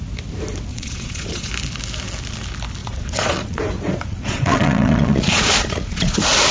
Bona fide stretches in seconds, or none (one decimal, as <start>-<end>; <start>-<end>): 0.0-0.7; 1.5-2.8; 3.6-4.1